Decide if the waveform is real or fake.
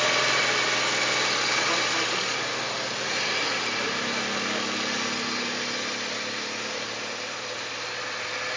real